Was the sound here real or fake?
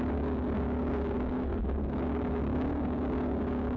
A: fake